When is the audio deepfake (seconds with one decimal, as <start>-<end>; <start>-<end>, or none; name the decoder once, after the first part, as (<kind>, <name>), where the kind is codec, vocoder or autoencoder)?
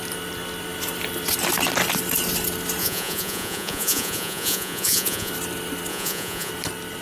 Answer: 2.8-5.3 (vocoder, Vocos); 5.9-6.5